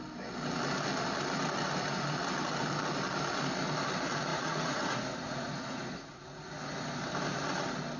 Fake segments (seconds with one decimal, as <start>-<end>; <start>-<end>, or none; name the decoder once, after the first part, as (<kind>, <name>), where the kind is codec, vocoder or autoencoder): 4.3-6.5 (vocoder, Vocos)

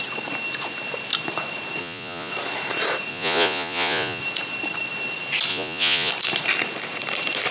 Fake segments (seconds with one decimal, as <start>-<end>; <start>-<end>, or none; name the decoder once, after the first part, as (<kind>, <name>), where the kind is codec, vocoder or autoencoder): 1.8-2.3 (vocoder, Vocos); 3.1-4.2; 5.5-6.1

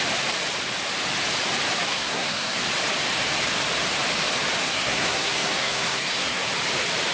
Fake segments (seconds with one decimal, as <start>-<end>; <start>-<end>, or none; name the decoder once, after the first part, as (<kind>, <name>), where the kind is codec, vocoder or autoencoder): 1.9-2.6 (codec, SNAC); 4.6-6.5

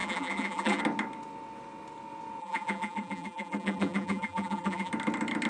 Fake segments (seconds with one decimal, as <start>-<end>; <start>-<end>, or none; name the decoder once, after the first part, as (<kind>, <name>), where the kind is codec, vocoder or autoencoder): 0.0-0.8 (vocoder, BigVGAN v2); 2.4-4.9

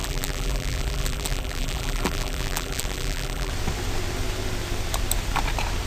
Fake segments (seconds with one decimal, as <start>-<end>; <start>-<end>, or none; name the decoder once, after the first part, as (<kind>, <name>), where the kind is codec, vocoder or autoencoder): 0.0-3.5 (vocoder, BigVGAN v2)